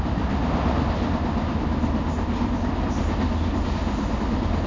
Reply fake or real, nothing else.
real